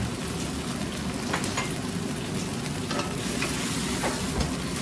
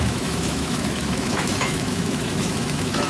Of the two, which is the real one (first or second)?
first